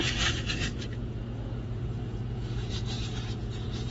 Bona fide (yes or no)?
no